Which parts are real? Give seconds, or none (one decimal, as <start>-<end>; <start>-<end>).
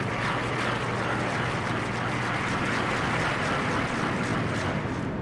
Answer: 0.0-5.2